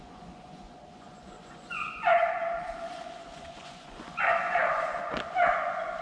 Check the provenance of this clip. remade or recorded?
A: remade